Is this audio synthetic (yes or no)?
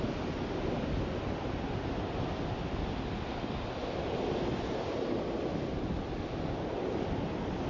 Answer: no